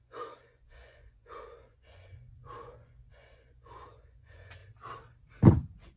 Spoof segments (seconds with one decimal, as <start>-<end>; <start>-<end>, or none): 0.0-4.6; 5.5-6.0